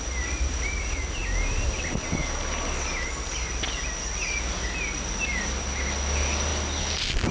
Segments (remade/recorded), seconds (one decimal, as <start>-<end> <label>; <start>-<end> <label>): 0.0-7.3 recorded

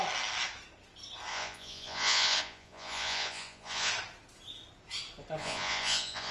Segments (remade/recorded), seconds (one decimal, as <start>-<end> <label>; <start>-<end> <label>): 0.0-1.3 recorded; 1.3-3.9 remade; 3.9-5.4 recorded; 5.4-6.3 remade

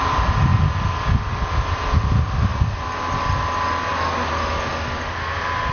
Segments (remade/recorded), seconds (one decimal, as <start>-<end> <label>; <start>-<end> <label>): 0.0-5.7 recorded

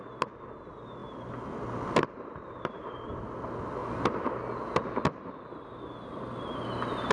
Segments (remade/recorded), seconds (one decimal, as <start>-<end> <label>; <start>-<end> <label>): 0.0-7.1 recorded